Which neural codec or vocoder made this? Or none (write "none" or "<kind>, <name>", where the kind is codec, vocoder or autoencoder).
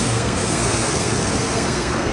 codec, SNAC